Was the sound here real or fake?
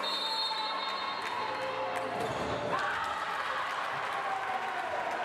real